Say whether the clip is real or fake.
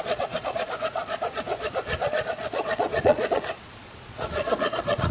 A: fake